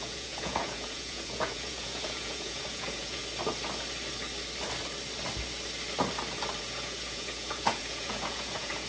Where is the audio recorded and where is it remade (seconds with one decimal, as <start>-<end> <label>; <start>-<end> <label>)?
0.0-3.2 remade; 3.2-6.6 recorded; 6.6-8.9 remade